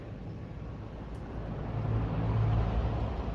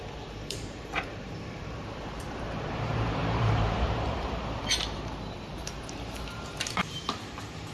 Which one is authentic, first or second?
first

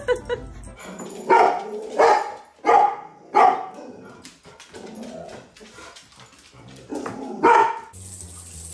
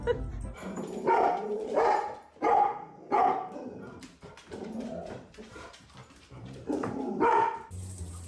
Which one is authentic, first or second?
first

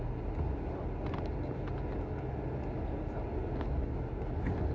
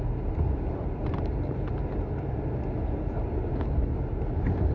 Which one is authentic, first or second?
first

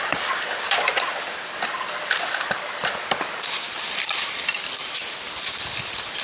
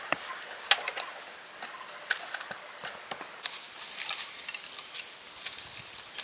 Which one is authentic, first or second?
second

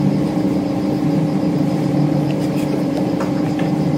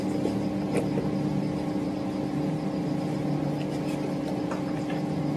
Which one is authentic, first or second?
second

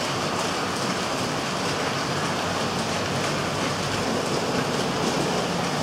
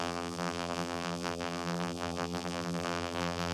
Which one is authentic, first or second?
first